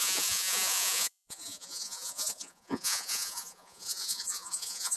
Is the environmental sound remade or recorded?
remade